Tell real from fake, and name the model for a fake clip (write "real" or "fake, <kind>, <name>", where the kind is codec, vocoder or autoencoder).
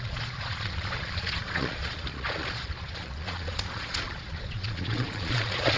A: fake, vocoder, Vocos